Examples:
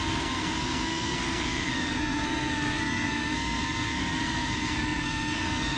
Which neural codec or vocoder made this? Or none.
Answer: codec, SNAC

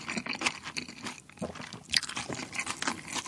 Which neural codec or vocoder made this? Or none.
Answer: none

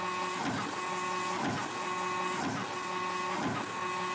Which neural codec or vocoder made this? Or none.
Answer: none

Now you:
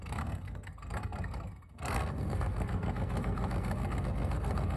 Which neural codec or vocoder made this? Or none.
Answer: codec, SNAC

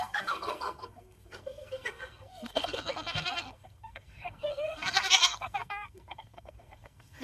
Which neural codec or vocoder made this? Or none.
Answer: codec, SNAC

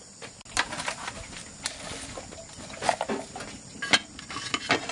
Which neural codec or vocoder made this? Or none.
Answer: none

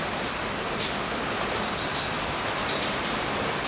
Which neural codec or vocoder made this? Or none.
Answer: none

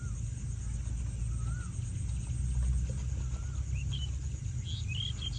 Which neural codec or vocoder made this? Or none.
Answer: none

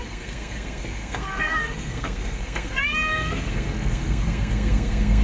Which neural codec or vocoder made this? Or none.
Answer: codec, SNAC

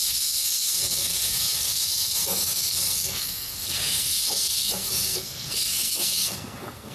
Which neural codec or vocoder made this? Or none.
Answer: codec, SNAC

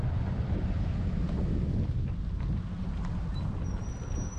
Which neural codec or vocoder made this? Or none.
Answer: none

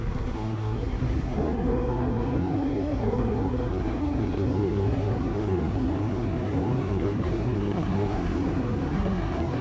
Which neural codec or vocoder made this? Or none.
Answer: codec, SNAC